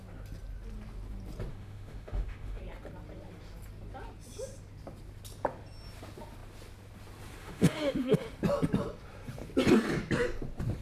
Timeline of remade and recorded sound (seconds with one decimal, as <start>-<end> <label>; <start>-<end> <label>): 0.0-1.5 recorded; 1.5-2.6 remade; 2.6-7.4 recorded; 7.4-8.2 remade; 8.2-10.8 recorded